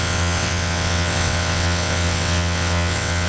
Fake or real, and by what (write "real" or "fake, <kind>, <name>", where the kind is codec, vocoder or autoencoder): fake, vocoder, WaveNeXt